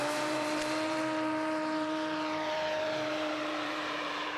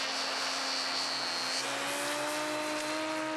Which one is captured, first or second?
second